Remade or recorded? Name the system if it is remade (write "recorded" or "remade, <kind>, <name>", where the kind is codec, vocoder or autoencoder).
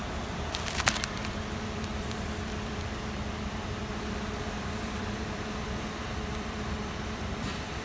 remade, vocoder, BigVGAN v2